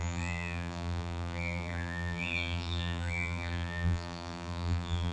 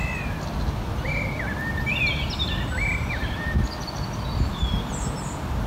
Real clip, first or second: second